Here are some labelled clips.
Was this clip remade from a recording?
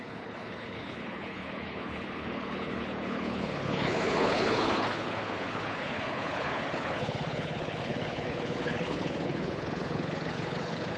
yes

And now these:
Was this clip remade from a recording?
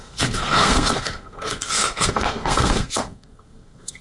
yes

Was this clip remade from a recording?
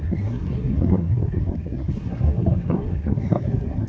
yes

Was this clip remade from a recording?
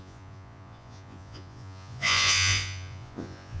yes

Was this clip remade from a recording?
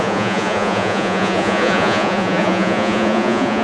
yes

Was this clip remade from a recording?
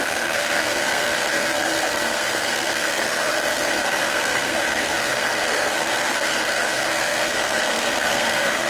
yes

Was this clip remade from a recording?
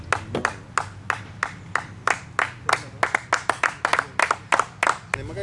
no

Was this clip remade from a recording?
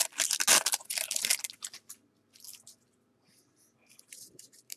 no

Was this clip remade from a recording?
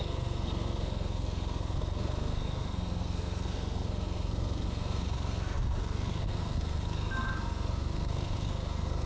yes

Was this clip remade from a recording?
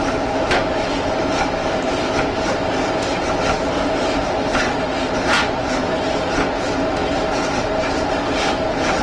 no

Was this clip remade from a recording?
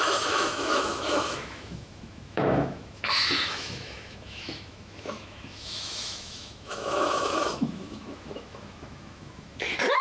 yes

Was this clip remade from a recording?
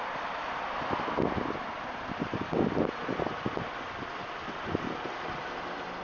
no